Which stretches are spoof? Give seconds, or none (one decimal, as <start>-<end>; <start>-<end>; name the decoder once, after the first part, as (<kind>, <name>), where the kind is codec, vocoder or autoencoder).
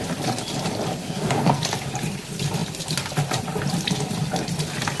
1.0-1.6 (codec, SNAC)